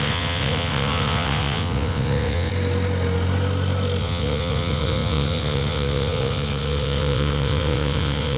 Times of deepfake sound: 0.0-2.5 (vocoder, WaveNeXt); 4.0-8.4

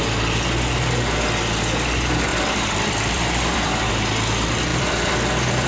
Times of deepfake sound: 2.3-3.9 (vocoder, BigVGAN v2); 4.7-5.7

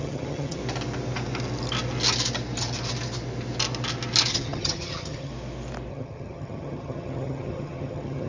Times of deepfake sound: 0.0-0.6 (vocoder, HiFi-GAN); 4.3-5.3; 5.9-8.3

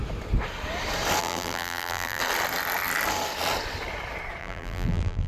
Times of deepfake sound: 1.2-2.2 (vocoder, BigVGAN v2); 4.4-5.3

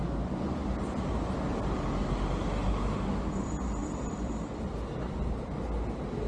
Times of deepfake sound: 3.8-5.4 (vocoder, BigVGAN v2)